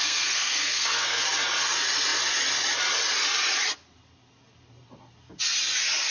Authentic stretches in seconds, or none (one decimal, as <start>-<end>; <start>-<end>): 1.2-6.1